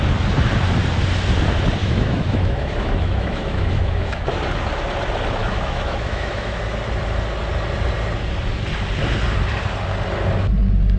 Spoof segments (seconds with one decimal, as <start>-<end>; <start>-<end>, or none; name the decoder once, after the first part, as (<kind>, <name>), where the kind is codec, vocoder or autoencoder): 1.8-4.2 (autoencoder, DAC-VAE); 5.4-6.6